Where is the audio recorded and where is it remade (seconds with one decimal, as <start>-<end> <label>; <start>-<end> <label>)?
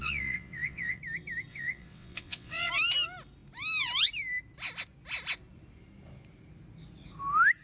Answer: 0.0-1.0 remade; 1.0-1.5 recorded; 1.5-2.7 remade; 2.7-7.6 recorded